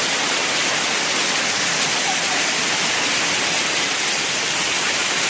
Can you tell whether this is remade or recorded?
recorded